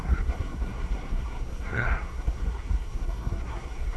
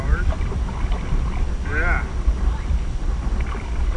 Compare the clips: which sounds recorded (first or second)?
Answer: second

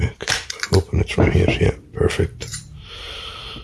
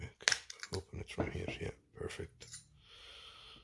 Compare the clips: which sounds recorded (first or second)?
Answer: second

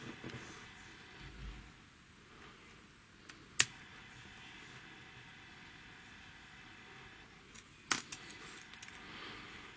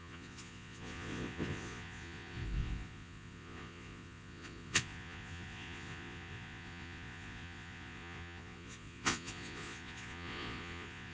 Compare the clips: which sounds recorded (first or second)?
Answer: first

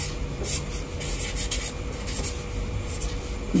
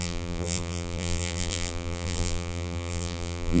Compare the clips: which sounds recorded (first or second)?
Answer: first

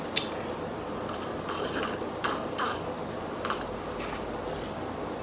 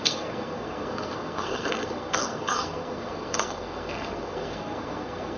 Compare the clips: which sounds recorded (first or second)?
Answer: first